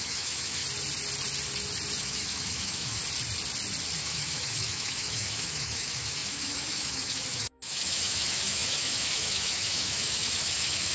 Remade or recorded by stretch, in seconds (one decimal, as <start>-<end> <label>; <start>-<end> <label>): 0.0-0.6 remade; 0.6-2.0 recorded; 2.0-3.0 remade; 3.0-4.0 recorded; 4.0-10.9 remade